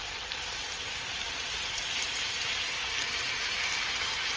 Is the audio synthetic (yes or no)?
yes